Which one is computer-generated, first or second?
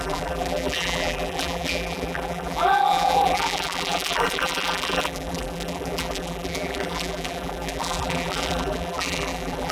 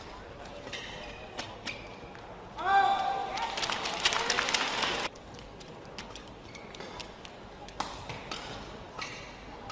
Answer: first